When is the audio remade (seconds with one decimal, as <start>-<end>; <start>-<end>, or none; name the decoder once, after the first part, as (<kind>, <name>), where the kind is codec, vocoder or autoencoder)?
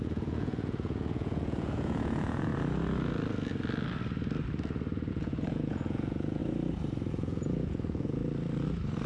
0.0-2.5 (vocoder, Vocos); 5.1-6.4; 7.1-8.2